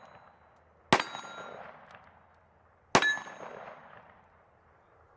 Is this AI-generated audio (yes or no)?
no